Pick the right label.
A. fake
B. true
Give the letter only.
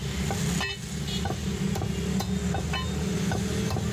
B